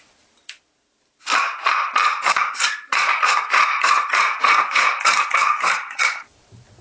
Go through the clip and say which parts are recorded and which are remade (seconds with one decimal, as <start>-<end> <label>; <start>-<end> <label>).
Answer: 0.0-2.0 recorded; 2.0-6.1 remade; 6.1-6.8 recorded

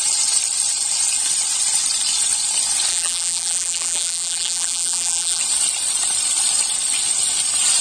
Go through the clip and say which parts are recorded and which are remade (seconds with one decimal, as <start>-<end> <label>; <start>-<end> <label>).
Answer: 0.0-2.9 recorded; 2.9-5.4 remade; 5.4-7.8 recorded

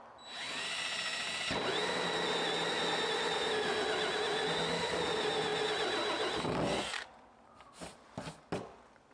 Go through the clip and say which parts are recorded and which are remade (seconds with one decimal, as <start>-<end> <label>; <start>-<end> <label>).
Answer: 0.0-9.1 recorded

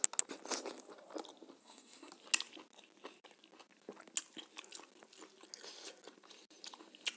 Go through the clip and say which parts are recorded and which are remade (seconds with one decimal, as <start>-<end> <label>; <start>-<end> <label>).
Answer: 0.0-1.6 recorded; 1.6-2.1 remade; 2.1-7.2 recorded

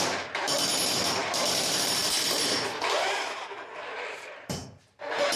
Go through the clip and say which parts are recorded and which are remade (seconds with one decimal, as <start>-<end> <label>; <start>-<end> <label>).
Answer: 0.0-4.6 remade; 4.6-5.4 recorded

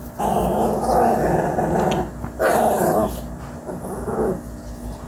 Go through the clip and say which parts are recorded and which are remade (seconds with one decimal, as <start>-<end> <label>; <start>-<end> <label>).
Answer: 0.0-5.1 recorded